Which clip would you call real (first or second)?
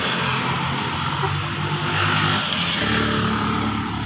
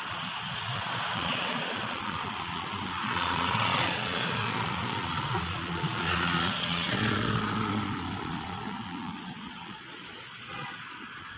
first